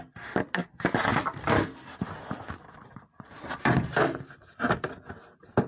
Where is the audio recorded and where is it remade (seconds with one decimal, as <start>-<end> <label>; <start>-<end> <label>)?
0.0-5.7 recorded